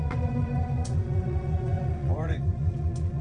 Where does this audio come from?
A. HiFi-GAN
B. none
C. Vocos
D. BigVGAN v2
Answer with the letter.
C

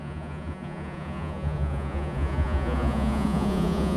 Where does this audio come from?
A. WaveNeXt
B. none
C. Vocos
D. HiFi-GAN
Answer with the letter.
C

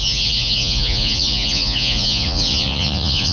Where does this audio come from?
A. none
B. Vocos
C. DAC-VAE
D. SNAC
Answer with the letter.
B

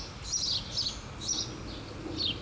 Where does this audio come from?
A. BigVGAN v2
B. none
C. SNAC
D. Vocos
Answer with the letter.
B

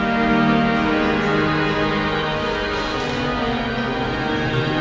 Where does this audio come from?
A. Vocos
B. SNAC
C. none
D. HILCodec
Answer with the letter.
C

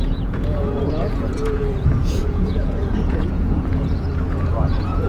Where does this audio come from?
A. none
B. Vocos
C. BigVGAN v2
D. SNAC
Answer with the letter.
B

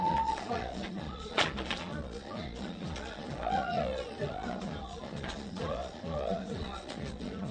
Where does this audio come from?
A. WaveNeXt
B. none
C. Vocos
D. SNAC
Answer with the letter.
C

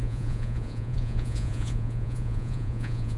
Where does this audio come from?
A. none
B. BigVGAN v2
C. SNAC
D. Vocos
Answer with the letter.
D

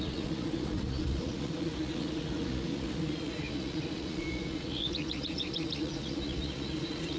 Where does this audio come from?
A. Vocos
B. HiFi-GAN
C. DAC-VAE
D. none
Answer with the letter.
A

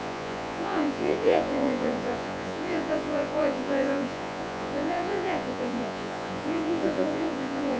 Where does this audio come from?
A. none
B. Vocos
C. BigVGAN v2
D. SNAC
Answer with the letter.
B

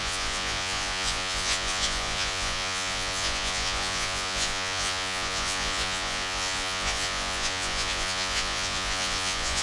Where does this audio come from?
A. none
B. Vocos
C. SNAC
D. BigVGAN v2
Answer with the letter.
B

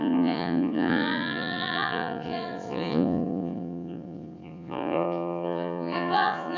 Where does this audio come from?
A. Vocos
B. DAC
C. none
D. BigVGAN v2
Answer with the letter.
A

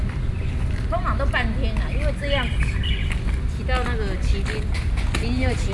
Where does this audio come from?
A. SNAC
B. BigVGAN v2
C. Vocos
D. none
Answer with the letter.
D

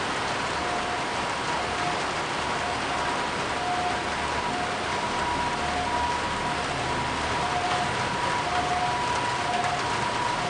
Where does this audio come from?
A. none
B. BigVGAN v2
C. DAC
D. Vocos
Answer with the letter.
A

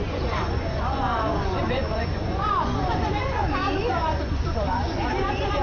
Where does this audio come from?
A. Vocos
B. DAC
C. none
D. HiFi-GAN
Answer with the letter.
A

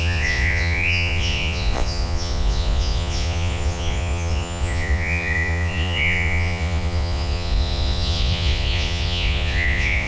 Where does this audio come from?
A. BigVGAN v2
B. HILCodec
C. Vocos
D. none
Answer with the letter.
C